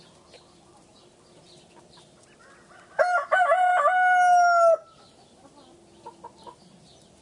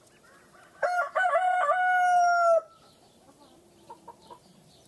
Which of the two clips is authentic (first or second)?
first